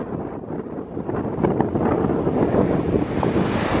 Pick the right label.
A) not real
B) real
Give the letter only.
B